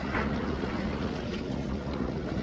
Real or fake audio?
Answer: fake